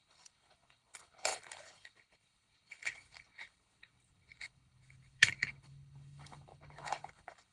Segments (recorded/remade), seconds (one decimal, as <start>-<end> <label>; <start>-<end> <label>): 0.0-7.5 remade